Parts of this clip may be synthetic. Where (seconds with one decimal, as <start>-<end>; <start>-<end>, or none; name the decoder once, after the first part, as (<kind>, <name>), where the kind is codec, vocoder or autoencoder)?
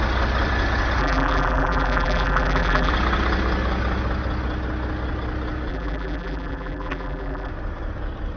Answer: 1.0-2.9 (vocoder, BigVGAN v2); 5.7-7.5